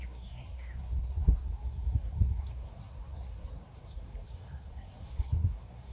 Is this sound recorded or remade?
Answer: remade